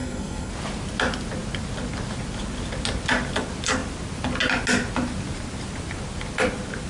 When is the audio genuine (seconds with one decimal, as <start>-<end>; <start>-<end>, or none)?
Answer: 0.5-6.9